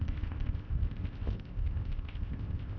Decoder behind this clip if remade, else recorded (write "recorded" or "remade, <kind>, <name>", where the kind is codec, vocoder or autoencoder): remade, codec, ZipCodec